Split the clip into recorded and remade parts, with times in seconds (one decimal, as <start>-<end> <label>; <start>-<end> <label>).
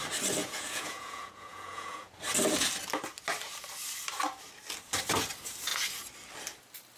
0.0-0.4 recorded; 0.4-2.1 remade; 2.1-7.0 recorded